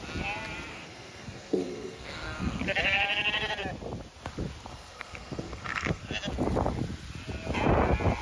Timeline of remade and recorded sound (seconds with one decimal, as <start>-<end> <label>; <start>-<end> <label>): 0.0-0.7 recorded; 0.7-2.6 remade; 2.6-4.7 recorded; 4.7-6.0 remade; 6.0-8.2 recorded

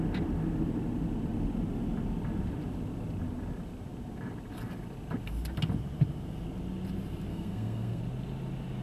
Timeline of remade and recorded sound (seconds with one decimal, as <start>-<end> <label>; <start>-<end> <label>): 0.0-7.3 recorded; 7.3-8.0 remade; 8.0-8.8 recorded

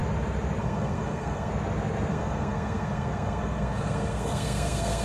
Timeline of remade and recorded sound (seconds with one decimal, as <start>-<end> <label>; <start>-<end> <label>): 0.0-0.6 recorded; 0.6-1.5 remade; 1.5-2.1 recorded; 2.1-5.0 remade

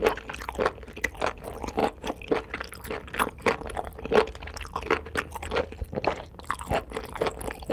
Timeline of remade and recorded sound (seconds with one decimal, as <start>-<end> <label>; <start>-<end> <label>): 0.0-7.7 recorded

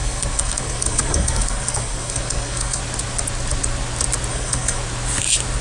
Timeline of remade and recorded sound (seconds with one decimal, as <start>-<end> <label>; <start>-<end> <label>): 0.0-2.8 remade; 2.8-4.3 recorded; 4.3-4.8 remade; 4.8-5.6 recorded

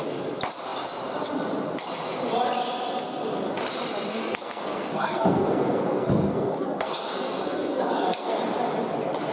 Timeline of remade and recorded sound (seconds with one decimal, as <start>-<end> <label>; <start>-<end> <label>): 0.0-4.1 recorded; 4.1-8.4 remade; 8.4-9.3 recorded

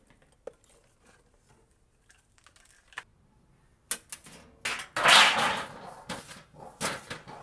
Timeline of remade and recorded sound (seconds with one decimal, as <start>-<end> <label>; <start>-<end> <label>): 0.0-7.4 recorded

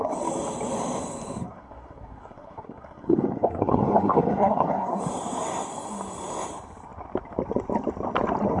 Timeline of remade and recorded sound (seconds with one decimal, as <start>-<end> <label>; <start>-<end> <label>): 0.0-1.4 recorded; 1.4-5.0 remade; 5.0-8.6 recorded